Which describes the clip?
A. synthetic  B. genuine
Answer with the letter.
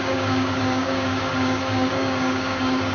A